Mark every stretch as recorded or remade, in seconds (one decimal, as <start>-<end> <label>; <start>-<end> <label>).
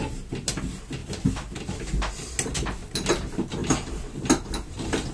0.0-5.1 recorded